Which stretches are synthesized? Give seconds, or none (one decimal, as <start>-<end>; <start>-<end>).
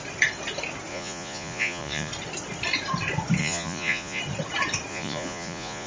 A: 0.9-2.1; 3.4-4.2; 4.9-5.9